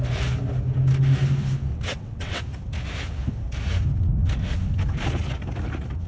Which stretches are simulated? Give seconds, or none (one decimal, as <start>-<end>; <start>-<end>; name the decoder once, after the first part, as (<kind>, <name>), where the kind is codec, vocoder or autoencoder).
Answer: 1.7-2.4 (vocoder, WaveNeXt)